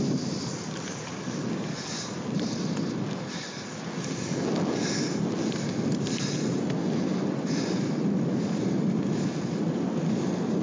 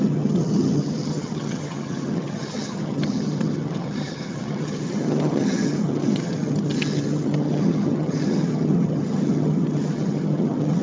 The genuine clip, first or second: first